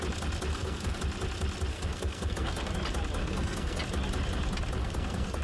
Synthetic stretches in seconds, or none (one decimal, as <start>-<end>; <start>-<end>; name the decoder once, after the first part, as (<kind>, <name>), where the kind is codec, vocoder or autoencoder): 0.5-1.0 (codec, SNAC); 1.7-2.7; 3.2-3.8; 4.8-5.4